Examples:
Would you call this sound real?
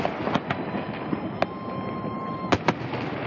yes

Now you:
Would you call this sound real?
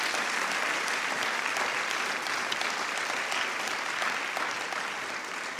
yes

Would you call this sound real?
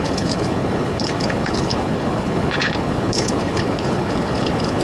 no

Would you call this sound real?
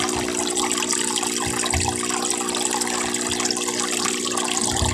yes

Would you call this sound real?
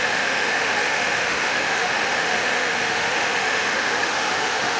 no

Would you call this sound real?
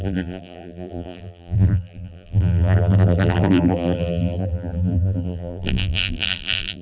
no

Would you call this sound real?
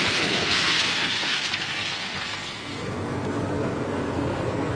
no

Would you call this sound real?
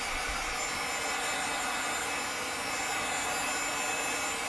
yes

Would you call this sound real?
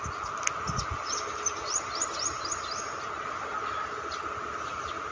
yes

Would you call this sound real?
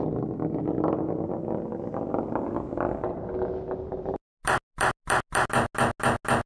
yes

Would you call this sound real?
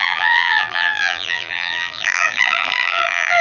no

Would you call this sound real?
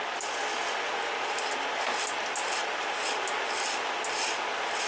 yes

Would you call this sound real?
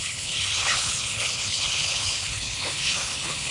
no